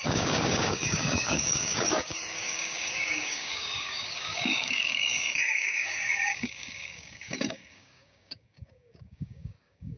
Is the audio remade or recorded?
remade